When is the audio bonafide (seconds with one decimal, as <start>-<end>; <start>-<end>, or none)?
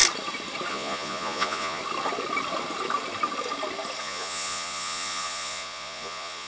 0.0-0.7; 1.8-4.0